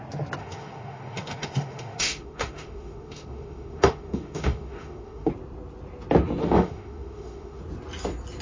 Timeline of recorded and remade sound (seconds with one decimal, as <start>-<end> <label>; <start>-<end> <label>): 0.0-0.4 recorded; 0.4-5.3 remade; 5.3-6.4 recorded; 6.4-7.6 remade; 7.6-8.4 recorded